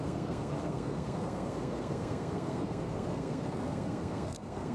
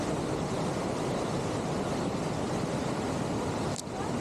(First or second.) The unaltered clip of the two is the second